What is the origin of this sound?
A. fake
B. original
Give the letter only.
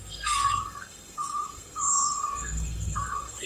A